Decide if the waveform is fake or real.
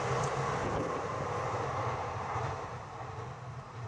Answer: real